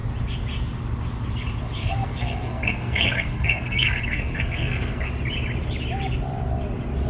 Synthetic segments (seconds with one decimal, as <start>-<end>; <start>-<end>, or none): 1.8-5.1